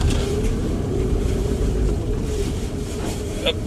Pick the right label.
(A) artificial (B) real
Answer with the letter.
A